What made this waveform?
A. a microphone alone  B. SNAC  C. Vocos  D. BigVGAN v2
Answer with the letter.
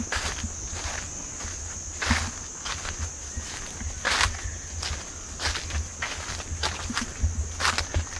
A